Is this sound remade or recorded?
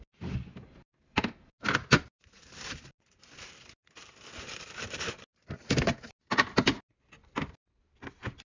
recorded